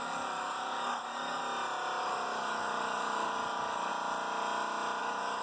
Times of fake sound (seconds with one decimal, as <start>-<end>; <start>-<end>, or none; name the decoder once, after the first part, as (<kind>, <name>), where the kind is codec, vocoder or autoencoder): 0.0-1.4 (codec, DAC); 2.0-3.9; 5.0-5.4